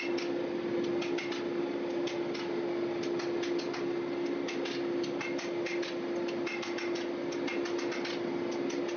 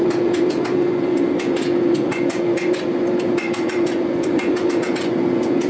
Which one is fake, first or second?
second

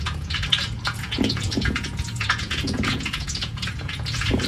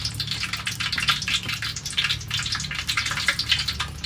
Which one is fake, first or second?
first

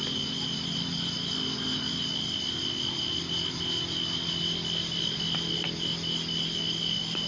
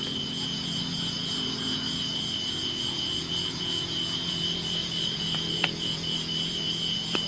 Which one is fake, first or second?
second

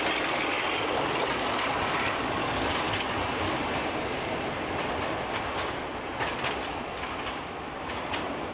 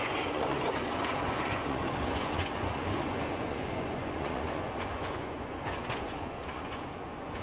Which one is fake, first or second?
second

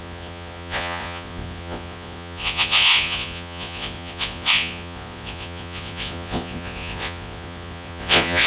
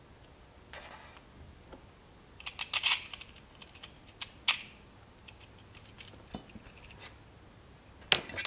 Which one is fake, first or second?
first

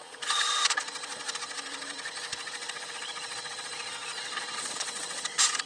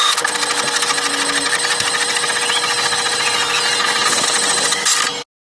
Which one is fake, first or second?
first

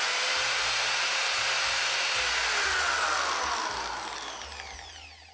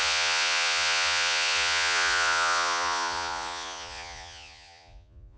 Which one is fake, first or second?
second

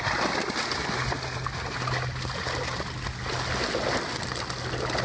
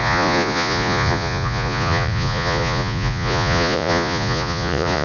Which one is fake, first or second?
second